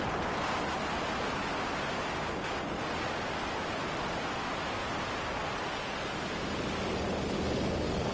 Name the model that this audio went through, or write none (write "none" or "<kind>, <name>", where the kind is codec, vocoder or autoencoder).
none